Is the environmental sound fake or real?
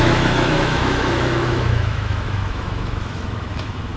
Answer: fake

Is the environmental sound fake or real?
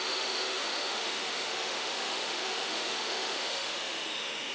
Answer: fake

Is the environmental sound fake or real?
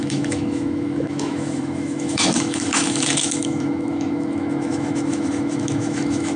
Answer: fake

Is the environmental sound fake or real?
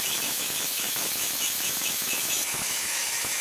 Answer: fake